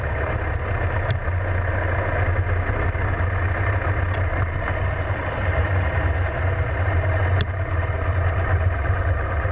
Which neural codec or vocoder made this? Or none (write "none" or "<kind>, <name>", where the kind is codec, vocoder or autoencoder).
none